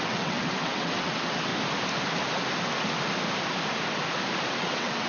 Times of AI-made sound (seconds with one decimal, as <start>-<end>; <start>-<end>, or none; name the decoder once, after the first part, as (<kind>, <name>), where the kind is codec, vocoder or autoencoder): 0.0-1.5 (vocoder, WaveNeXt); 4.5-5.1